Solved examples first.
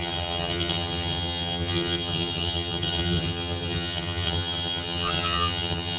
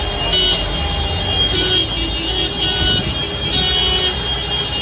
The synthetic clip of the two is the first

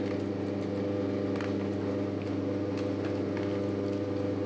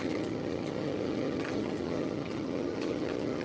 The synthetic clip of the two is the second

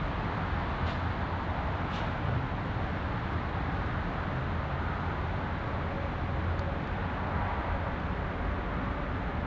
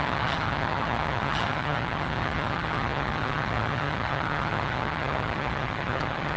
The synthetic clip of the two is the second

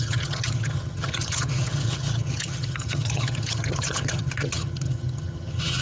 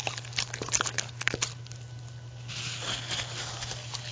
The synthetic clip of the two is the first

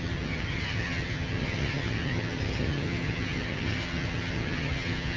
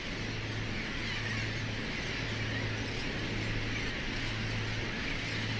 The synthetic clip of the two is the first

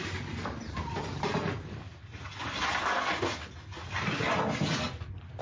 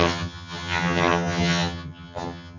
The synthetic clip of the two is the second